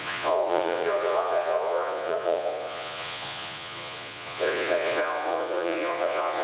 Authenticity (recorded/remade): remade